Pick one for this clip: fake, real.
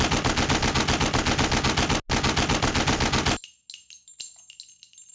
real